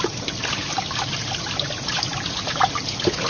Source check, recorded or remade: recorded